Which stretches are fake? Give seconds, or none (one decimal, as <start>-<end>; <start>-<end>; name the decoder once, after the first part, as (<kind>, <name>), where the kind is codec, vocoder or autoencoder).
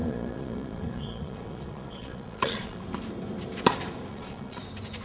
0.0-2.8 (vocoder, Vocos); 4.1-4.6